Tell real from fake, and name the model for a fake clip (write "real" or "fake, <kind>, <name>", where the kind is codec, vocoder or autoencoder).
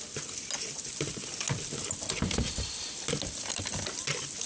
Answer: real